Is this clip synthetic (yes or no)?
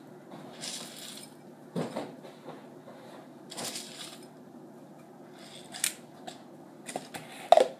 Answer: no